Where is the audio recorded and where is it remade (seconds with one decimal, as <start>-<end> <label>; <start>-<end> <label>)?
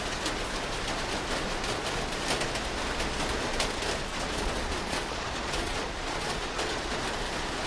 0.0-4.1 recorded; 4.1-7.0 remade; 7.0-7.7 recorded